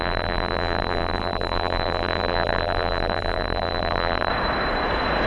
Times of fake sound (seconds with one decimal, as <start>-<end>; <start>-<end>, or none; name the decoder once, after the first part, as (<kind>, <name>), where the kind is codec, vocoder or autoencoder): 0.0-4.3 (vocoder, BigVGAN v2)